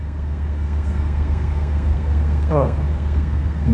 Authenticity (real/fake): fake